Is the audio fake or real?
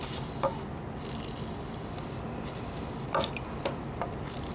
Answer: real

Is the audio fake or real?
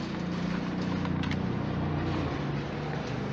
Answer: real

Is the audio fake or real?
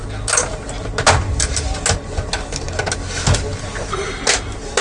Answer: real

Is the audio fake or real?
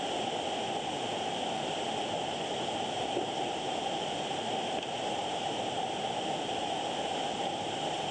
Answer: real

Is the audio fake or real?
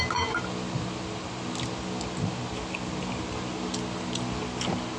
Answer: real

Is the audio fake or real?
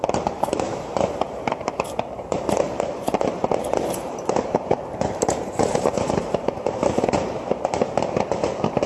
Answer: fake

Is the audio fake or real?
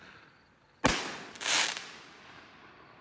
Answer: real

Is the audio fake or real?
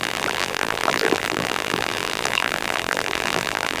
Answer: fake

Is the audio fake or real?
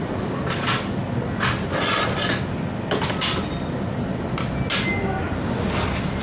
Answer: real